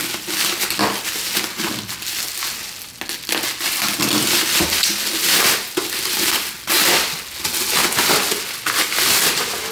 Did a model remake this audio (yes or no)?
no